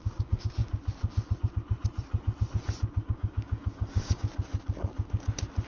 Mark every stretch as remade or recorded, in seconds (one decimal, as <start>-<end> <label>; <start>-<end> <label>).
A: 0.0-0.6 remade; 0.6-3.1 recorded; 3.1-4.3 remade; 4.3-5.7 recorded